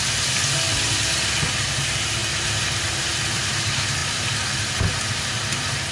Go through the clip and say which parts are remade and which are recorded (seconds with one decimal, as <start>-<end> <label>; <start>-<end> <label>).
0.0-5.9 recorded